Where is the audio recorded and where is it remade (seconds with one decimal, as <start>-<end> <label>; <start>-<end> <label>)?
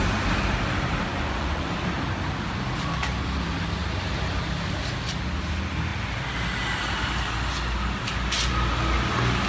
0.0-1.1 recorded; 1.1-1.6 remade; 1.6-9.5 recorded